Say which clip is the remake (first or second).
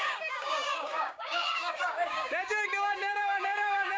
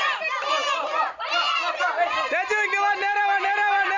first